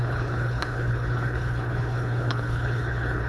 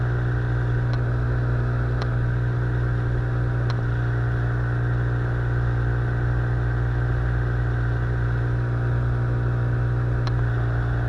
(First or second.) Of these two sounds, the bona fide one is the second